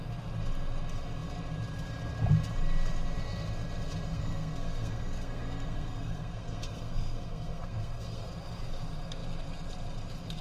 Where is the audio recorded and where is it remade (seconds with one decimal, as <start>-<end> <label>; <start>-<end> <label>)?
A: 0.0-4.1 recorded; 4.1-8.3 remade; 8.3-10.4 recorded